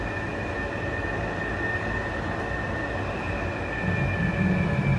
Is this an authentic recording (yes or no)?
yes